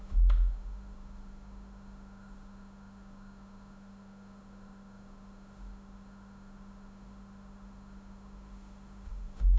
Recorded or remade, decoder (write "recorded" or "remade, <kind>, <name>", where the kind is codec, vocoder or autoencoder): remade, autoencoder, DAC-VAE